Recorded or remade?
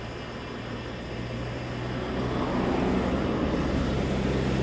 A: recorded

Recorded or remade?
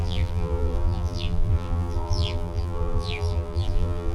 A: remade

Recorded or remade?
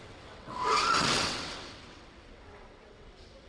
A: remade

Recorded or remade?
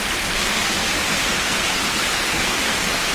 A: remade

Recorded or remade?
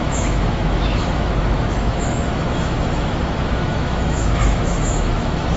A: remade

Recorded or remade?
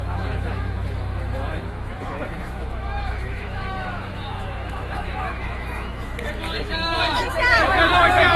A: remade